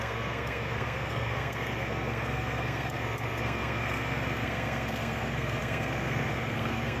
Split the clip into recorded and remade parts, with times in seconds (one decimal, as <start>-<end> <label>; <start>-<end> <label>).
0.0-7.0 remade